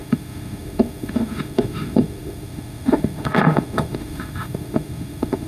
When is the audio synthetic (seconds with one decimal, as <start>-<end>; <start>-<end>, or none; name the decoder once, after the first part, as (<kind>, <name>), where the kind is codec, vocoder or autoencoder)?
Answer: 0.0-5.5 (autoencoder, DAC-VAE)